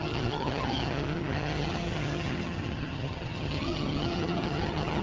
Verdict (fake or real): fake